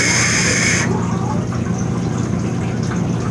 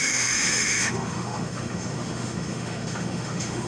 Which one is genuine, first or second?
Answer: first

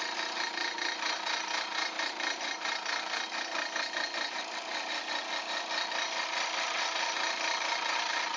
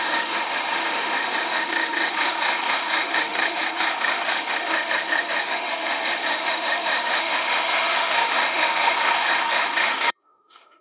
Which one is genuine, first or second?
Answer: first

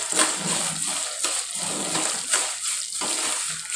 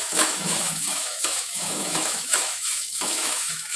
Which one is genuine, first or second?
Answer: first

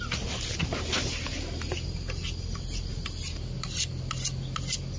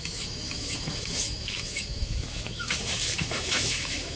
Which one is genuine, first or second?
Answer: first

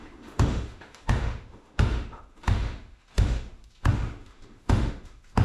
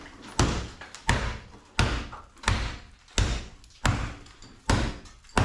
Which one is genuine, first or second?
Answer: second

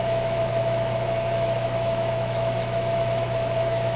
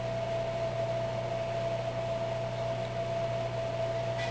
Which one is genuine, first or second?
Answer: second